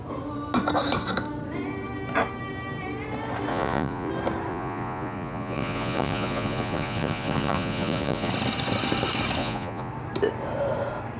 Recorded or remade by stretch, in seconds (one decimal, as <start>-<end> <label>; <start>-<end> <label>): 0.0-3.5 recorded; 3.5-4.1 remade; 4.1-4.5 recorded; 4.5-8.3 remade; 8.3-9.4 recorded; 9.4-9.9 remade; 9.9-11.2 recorded